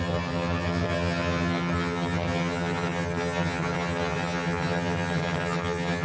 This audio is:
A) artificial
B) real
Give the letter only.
A